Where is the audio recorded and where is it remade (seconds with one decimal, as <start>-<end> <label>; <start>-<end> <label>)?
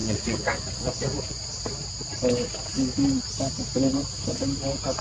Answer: 0.0-1.4 remade; 1.4-5.0 recorded